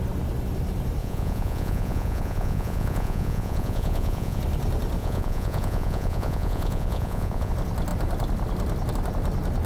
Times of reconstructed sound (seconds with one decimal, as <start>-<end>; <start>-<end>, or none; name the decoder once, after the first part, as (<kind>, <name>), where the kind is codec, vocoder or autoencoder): 1.0-4.4 (vocoder, Vocos); 5.0-7.5